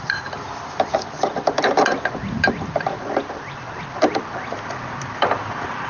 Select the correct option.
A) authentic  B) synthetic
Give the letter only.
B